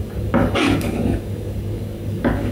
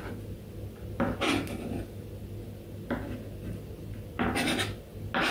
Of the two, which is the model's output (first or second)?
first